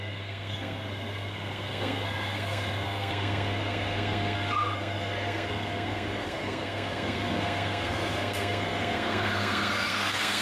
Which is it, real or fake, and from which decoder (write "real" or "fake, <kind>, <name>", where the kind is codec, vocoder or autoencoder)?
fake, codec, SNAC